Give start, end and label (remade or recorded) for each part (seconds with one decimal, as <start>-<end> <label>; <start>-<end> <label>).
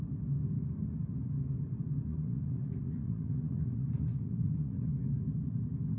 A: 0.0-2.1 recorded; 2.1-4.9 remade; 4.9-6.0 recorded